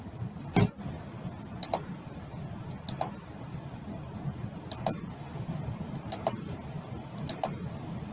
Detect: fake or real real